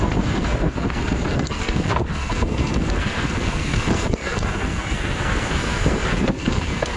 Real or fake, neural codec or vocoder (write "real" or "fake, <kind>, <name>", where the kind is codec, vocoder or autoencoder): fake, codec, SNAC